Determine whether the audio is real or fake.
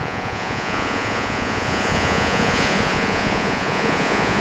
fake